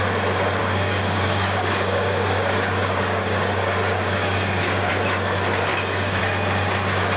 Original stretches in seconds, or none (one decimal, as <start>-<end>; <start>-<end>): 0.0-0.6; 4.9-5.7; 6.2-7.2